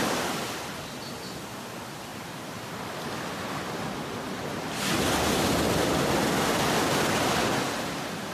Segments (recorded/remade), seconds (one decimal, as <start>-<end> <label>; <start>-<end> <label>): 0.0-8.3 recorded